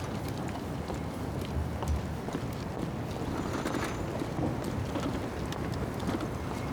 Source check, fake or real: real